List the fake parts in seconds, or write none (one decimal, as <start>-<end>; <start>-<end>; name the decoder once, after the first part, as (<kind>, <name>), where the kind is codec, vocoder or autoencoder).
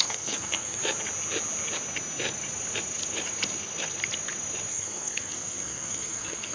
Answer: 0.0-0.8 (codec, SNAC); 4.7-6.5